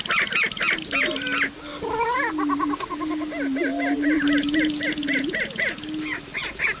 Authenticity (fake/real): real